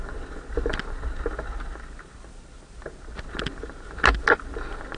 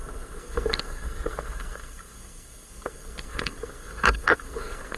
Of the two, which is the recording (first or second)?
first